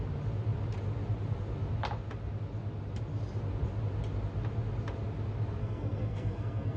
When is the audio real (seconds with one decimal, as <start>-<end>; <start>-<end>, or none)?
0.0-5.6